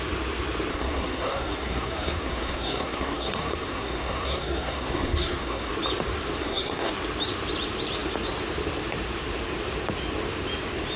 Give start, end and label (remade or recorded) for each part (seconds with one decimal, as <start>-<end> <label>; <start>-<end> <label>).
0.0-0.7 recorded; 0.7-5.7 remade; 5.7-6.4 recorded; 6.4-6.9 remade; 6.9-11.0 recorded